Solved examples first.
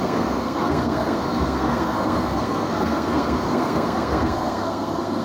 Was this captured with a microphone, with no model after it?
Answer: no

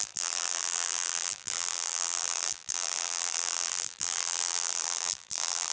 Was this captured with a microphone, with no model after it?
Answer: no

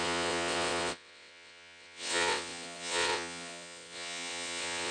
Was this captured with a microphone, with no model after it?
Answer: no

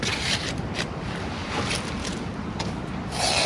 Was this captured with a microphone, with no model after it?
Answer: yes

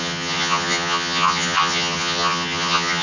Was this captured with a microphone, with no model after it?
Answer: no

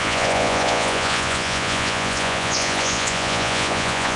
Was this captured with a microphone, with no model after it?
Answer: no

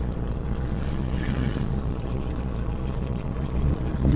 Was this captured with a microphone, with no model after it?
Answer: no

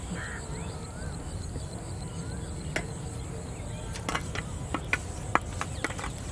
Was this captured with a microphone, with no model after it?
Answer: yes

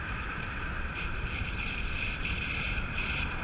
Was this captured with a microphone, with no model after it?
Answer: no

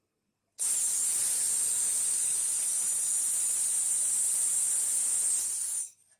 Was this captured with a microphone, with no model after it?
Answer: yes